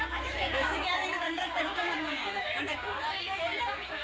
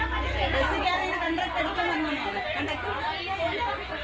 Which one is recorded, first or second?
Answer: second